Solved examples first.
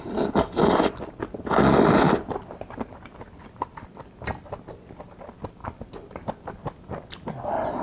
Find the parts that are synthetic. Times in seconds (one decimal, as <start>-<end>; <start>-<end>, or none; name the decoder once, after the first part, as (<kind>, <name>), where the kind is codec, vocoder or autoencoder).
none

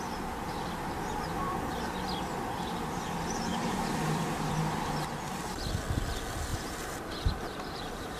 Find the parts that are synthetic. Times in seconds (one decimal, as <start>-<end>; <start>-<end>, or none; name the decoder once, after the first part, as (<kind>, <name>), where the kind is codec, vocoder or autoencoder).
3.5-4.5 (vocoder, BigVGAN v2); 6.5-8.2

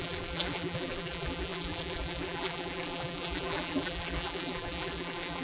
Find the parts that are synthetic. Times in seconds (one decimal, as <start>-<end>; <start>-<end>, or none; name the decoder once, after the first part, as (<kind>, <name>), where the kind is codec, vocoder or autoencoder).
0.0-5.4 (vocoder, BigVGAN v2)